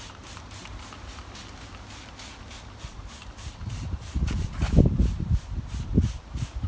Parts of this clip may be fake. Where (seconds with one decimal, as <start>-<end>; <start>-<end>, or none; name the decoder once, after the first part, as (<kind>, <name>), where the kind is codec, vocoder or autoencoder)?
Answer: 0.0-0.6 (vocoder, BigVGAN v2); 2.9-6.7